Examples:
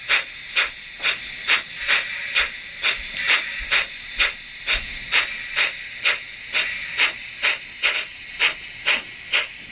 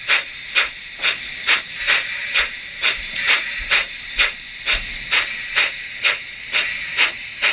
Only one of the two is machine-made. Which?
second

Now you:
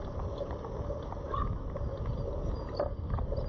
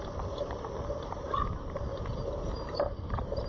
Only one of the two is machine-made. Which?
second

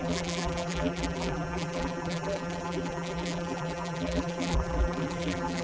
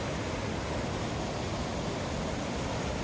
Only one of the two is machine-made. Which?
first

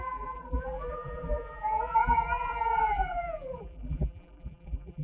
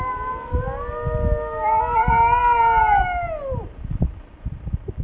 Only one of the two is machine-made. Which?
first